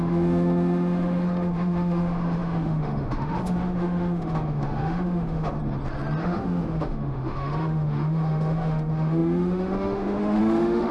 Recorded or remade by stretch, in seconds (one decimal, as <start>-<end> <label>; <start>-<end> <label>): 0.0-5.6 remade; 5.6-6.2 recorded; 6.2-10.9 remade